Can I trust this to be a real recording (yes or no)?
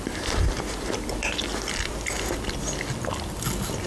yes